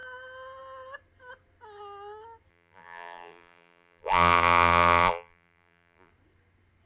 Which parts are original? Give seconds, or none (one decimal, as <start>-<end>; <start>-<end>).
0.0-2.5; 6.1-6.9